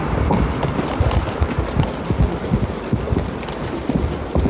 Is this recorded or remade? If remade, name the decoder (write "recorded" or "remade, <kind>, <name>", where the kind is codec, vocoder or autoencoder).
recorded